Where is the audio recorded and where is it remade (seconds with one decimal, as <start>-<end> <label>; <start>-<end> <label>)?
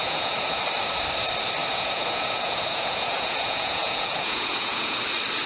0.0-0.6 remade; 0.6-1.7 recorded; 1.7-5.0 remade; 5.0-5.5 recorded